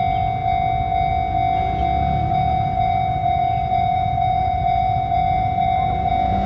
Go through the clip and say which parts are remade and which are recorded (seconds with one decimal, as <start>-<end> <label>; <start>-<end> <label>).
0.0-2.2 recorded; 2.2-6.1 remade; 6.1-6.5 recorded